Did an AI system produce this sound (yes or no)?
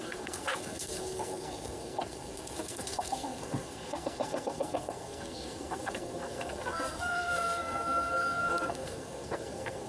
yes